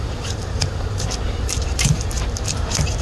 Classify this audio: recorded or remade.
remade